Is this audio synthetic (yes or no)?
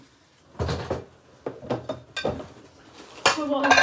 no